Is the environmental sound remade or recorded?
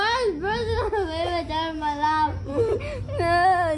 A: recorded